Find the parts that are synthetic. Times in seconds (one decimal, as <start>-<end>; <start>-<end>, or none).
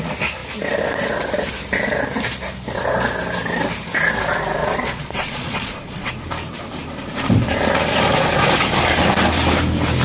4.6-6.1